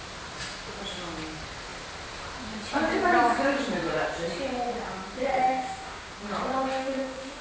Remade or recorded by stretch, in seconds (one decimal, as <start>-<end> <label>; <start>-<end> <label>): 0.0-5.3 recorded; 5.3-6.1 remade; 6.1-6.8 recorded; 6.8-7.4 remade